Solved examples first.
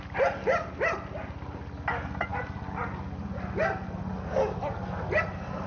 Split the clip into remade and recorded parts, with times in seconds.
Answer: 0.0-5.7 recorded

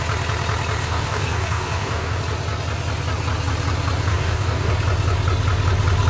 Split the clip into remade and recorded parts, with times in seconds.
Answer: 0.0-0.8 recorded; 0.8-2.2 remade; 2.2-4.1 recorded; 4.1-4.7 remade; 4.7-6.1 recorded

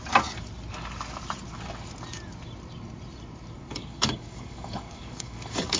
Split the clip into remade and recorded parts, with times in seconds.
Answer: 0.0-3.7 recorded; 3.7-5.8 remade

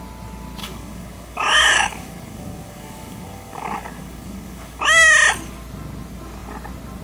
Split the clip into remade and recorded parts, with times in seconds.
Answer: 0.0-0.6 recorded; 0.6-4.8 remade; 4.8-7.0 recorded

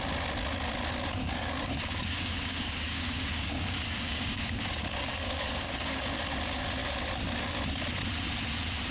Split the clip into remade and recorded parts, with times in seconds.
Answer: 0.0-1.2 recorded; 1.2-6.0 remade; 6.0-8.9 recorded

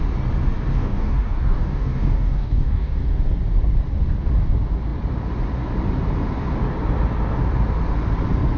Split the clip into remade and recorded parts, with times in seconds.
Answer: 0.0-0.7 recorded; 0.7-3.0 remade; 3.0-8.6 recorded